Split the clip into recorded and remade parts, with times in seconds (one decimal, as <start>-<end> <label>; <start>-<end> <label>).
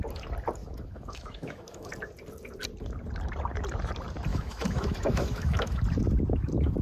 0.0-0.6 recorded; 0.6-1.9 remade; 1.9-4.3 recorded; 4.3-5.8 remade; 5.8-6.8 recorded